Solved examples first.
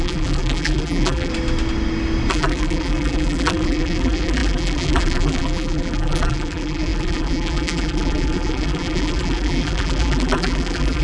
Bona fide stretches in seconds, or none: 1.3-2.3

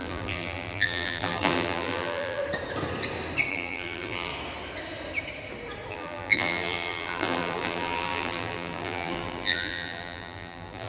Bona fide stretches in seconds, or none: 2.4-3.5; 4.3-5.9

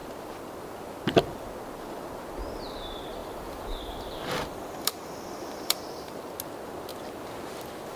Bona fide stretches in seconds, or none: 0.0-3.2; 6.2-8.0

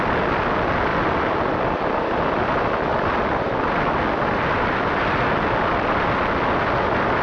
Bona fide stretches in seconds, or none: 0.0-0.9; 5.2-7.2

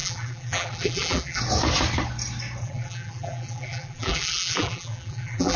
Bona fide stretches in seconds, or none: 1.4-2.6

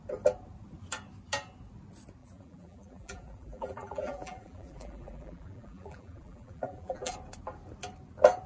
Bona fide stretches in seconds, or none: 0.0-2.2; 7.1-8.5